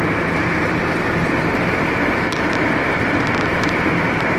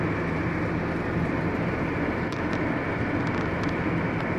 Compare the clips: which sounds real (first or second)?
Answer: second